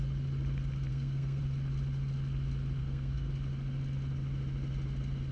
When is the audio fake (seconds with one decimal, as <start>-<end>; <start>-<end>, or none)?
0.9-1.4; 2.8-3.3